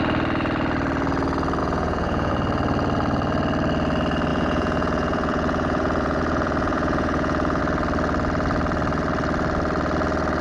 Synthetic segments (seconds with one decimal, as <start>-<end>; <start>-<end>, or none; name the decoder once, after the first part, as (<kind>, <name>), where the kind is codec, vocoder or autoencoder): 1.6-2.3 (vocoder, Vocos); 4.3-7.6